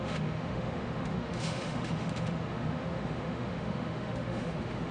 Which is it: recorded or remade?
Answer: remade